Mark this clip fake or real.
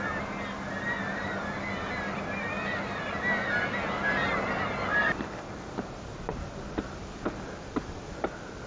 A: real